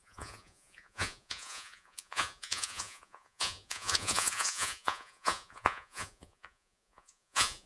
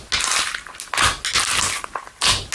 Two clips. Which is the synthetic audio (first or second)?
first